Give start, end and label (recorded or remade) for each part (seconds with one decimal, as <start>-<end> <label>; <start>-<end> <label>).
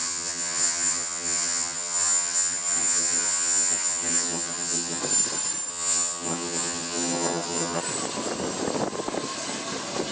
0.0-5.0 remade; 5.0-5.7 recorded; 5.7-7.8 remade; 7.8-10.1 recorded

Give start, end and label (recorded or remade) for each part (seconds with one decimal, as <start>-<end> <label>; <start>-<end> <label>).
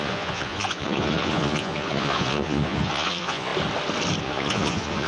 0.0-3.5 remade; 3.5-4.2 recorded; 4.2-5.1 remade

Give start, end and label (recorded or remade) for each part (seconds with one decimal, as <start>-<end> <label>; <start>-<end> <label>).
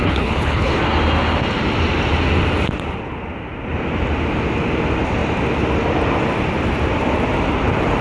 0.0-0.8 remade; 0.8-8.0 recorded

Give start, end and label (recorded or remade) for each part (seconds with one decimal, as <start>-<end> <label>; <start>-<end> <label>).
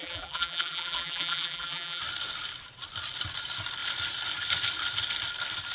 0.0-2.0 remade; 2.0-5.7 recorded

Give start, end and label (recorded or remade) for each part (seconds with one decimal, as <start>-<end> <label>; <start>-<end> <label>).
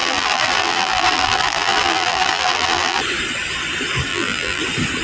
0.0-3.0 remade; 3.0-4.1 recorded; 4.1-4.6 remade; 4.6-5.0 recorded